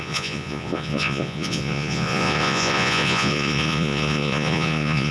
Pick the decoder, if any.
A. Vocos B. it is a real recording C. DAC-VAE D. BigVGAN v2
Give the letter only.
A